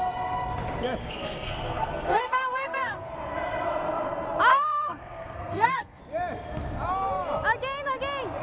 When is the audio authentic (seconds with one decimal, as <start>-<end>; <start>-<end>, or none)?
0.0-1.0; 3.1-4.5; 6.0-8.4